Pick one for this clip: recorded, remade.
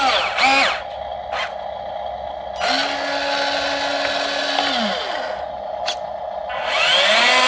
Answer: recorded